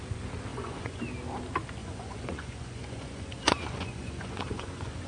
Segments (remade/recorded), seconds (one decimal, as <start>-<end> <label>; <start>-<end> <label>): 0.0-0.5 recorded; 0.5-1.0 remade; 1.0-1.8 recorded; 1.8-5.1 remade